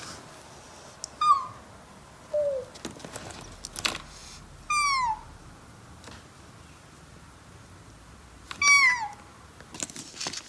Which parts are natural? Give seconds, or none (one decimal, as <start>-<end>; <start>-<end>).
0.0-10.5